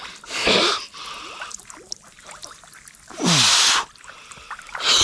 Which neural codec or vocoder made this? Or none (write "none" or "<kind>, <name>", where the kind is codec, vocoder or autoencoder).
none